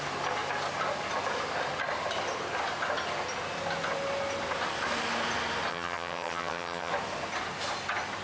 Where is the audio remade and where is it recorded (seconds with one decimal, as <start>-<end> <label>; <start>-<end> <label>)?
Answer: 0.0-5.7 recorded; 5.7-6.9 remade; 6.9-8.2 recorded